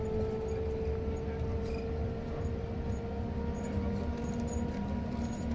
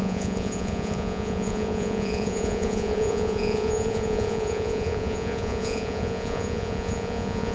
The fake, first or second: second